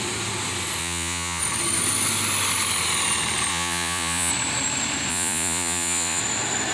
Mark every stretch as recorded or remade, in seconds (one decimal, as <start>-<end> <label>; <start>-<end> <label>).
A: 0.0-0.8 recorded; 0.8-1.4 remade; 1.4-3.5 recorded; 3.5-4.3 remade; 4.3-5.1 recorded; 5.1-6.2 remade; 6.2-6.7 recorded